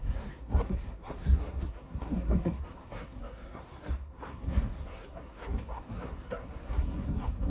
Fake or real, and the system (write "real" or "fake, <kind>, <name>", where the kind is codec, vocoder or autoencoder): fake, codec, SNAC